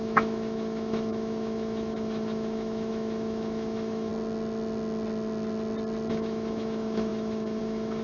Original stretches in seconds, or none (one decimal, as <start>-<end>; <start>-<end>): 4.1-6.1